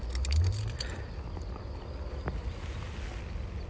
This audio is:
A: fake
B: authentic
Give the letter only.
B